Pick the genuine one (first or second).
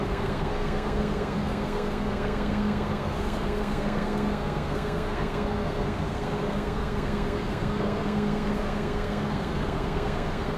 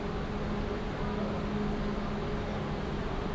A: second